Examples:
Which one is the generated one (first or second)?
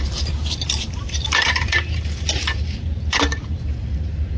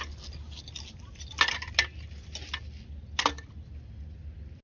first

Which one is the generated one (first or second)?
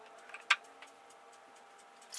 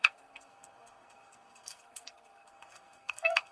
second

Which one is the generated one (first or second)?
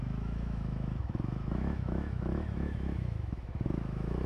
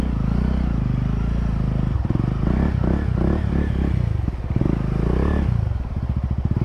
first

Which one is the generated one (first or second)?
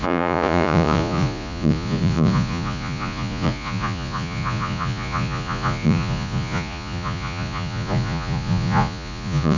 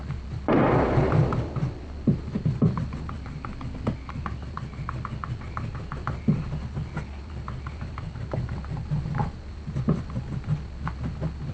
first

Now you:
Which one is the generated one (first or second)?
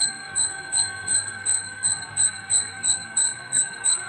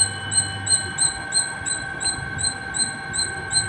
first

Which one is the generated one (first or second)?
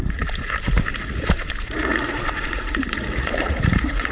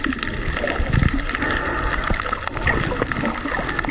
first